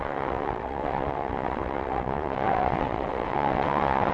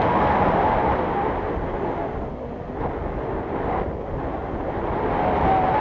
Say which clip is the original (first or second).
second